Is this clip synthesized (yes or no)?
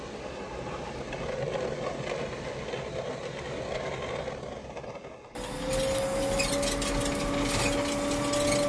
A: no